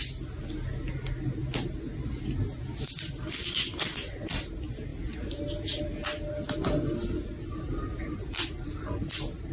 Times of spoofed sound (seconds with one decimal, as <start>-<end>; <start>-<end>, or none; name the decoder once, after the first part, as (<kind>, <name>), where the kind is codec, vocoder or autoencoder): none